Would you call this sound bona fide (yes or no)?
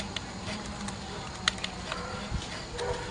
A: yes